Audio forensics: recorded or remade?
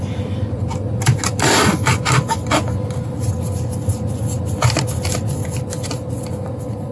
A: recorded